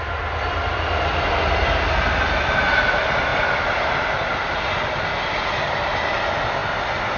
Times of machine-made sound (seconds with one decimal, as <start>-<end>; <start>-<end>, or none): none